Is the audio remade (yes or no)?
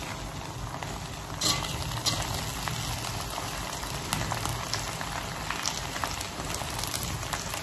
no